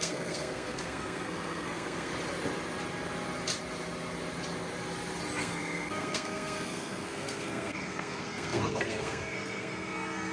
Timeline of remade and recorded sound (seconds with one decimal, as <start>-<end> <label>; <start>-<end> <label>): 0.0-2.1 remade; 2.1-5.4 recorded; 5.4-10.3 remade